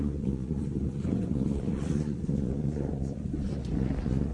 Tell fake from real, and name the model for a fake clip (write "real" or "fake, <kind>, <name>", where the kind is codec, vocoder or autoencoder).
fake, vocoder, Vocos